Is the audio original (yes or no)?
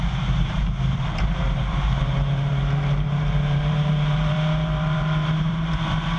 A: no